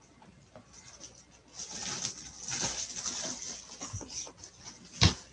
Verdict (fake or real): real